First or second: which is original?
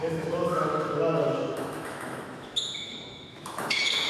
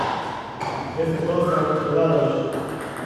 second